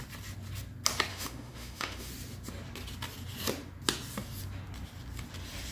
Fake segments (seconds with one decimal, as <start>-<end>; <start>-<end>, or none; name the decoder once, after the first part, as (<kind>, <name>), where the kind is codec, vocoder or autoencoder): 1.1-2.1 (autoencoder, DAC-VAE)